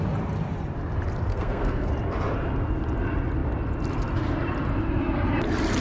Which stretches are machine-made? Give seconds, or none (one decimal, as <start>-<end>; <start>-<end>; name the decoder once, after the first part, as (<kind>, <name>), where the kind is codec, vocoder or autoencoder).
1.3-1.9 (codec, SNAC)

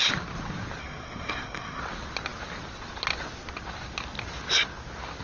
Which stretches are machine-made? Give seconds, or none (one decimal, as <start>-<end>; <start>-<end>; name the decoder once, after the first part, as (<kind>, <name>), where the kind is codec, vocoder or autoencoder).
0.8-1.8 (codec, SNAC)

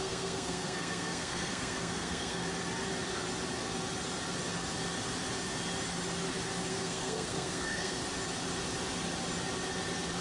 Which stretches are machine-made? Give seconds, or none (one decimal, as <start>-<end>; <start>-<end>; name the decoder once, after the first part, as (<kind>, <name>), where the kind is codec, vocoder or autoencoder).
0.0-2.4 (codec, SNAC); 6.7-8.0

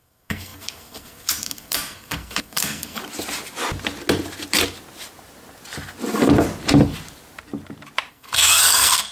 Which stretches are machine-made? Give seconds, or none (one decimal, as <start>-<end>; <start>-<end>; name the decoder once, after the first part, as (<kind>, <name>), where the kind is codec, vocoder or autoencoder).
0.0-3.0 (codec, SNAC); 8.1-9.1

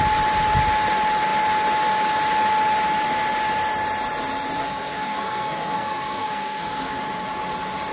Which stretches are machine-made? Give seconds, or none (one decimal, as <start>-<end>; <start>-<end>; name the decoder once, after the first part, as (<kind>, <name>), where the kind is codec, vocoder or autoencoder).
4.6-7.0 (codec, SNAC)

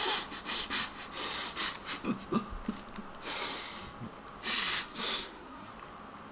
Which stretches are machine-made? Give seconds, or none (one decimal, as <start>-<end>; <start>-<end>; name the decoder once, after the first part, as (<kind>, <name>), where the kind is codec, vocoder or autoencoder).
4.8-5.7 (codec, SNAC)

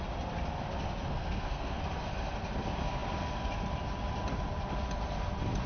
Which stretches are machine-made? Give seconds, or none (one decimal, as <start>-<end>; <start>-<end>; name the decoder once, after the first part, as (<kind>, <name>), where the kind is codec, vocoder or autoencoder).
1.1-1.8 (codec, SNAC)